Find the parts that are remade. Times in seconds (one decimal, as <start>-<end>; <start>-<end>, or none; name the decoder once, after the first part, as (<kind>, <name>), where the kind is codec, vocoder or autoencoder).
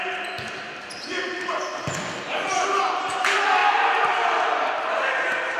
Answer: none